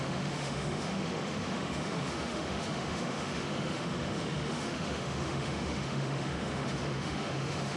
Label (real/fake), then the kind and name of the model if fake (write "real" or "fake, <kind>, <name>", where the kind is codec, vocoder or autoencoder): fake, autoencoder, DAC-VAE